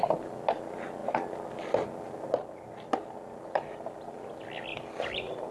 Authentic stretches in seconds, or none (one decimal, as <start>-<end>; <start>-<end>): 0.0-5.5